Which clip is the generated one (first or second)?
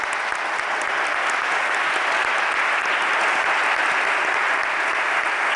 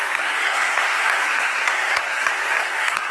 second